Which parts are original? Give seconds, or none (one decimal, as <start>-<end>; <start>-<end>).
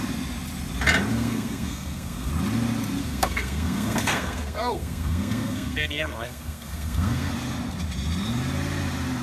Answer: 0.0-1.1; 2.3-3.0; 7.3-9.2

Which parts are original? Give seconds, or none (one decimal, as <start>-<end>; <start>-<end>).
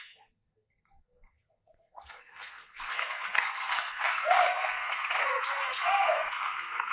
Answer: none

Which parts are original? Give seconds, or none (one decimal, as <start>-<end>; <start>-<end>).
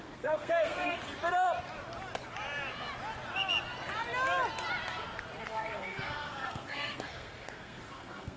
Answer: 1.0-5.4